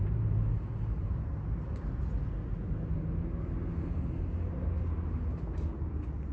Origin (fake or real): real